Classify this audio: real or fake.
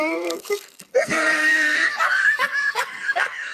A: fake